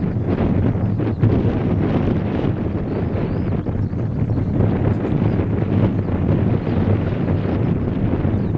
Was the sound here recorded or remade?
recorded